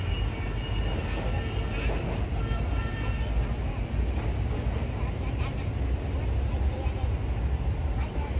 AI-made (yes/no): no